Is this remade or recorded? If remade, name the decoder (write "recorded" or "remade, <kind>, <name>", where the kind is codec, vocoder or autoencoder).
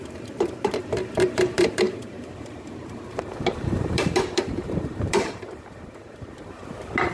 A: remade, vocoder, BigVGAN v2